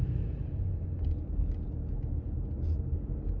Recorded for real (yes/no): yes